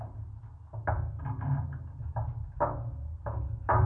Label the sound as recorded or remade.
recorded